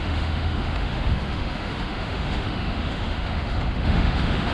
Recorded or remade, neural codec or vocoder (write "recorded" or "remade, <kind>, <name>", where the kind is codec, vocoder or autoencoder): remade, autoencoder, DAC-VAE